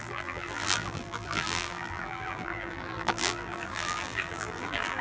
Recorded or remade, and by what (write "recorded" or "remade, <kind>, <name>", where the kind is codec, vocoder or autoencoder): remade, vocoder, BigVGAN v2